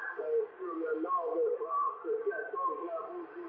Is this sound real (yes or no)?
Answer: no